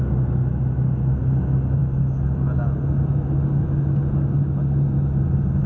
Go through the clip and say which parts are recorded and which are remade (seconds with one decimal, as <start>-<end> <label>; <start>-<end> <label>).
0.0-5.7 recorded